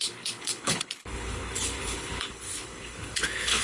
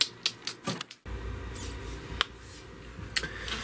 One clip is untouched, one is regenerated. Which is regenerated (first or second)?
first